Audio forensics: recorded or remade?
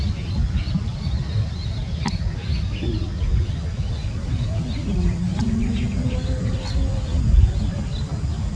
recorded